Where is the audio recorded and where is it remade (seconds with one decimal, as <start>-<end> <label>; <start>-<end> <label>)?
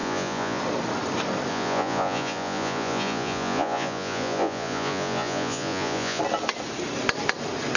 0.0-0.6 remade; 0.6-1.5 recorded; 1.5-6.2 remade; 6.2-7.8 recorded